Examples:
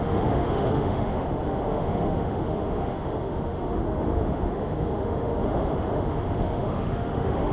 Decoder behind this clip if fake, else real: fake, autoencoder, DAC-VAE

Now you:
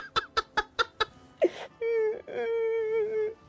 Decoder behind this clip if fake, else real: real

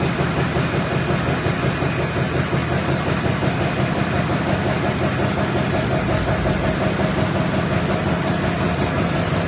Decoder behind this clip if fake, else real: real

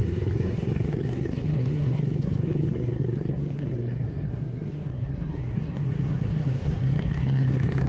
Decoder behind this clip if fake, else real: fake, codec, SNAC